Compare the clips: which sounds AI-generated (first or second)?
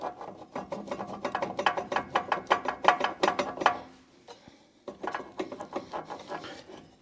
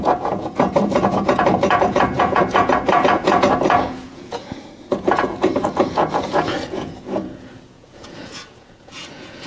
second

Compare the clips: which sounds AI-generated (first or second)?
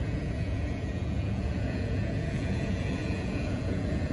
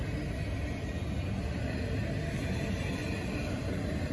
first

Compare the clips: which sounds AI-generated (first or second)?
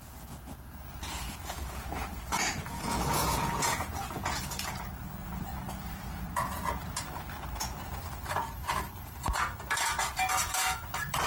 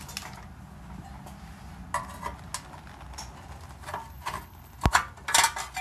first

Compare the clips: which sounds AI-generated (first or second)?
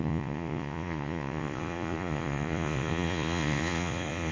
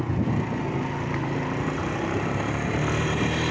first